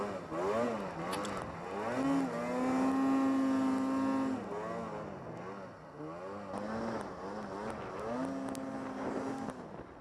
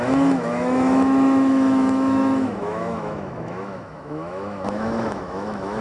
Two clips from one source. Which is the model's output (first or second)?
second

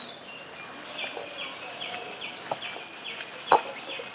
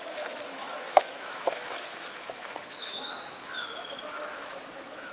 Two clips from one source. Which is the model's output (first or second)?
second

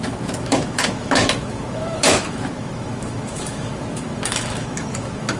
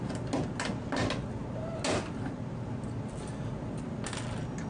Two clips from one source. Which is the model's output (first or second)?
first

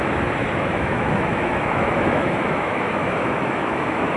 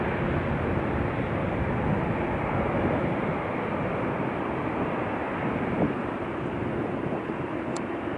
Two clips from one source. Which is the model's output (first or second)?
first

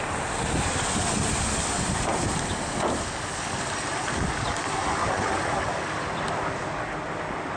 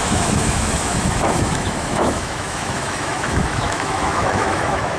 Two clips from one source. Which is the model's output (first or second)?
second